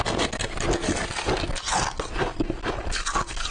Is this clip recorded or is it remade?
recorded